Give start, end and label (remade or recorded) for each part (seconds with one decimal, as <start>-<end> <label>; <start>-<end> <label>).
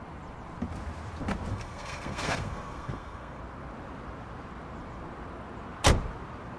0.0-1.5 recorded; 1.5-3.4 remade; 3.4-6.6 recorded